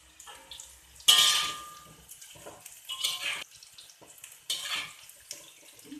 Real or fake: real